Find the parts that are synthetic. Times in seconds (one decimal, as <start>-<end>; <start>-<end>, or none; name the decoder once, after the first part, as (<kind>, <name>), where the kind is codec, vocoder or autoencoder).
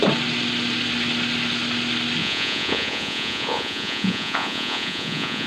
2.2-5.5 (vocoder, Vocos)